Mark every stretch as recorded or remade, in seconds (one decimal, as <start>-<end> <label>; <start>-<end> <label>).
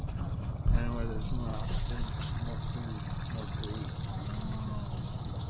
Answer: 0.0-1.5 recorded; 1.5-2.3 remade; 2.3-4.1 recorded; 4.1-5.5 remade